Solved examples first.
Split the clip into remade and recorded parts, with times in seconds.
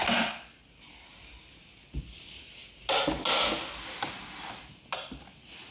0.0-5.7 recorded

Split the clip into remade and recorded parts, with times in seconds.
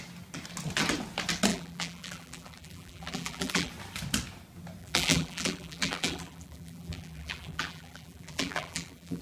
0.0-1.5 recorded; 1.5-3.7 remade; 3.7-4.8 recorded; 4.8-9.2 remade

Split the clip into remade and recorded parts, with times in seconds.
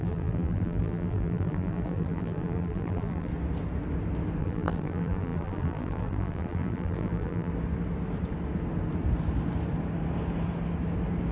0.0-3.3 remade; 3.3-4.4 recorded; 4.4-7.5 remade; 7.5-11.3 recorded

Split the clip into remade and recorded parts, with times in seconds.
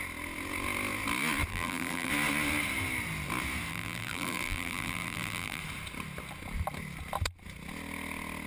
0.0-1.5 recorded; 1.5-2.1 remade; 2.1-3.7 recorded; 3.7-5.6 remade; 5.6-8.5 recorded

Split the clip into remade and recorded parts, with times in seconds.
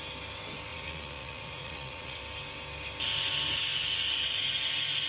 0.0-0.7 recorded; 0.7-2.2 remade; 2.2-5.1 recorded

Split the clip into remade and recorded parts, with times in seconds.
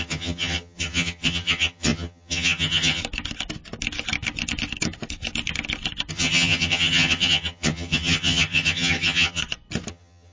0.0-3.0 remade; 3.0-6.1 recorded; 6.1-9.4 remade; 9.4-9.9 recorded; 9.9-10.3 remade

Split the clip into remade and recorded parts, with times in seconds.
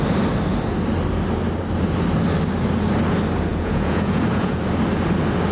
0.0-3.5 recorded; 3.5-4.6 remade; 4.6-5.5 recorded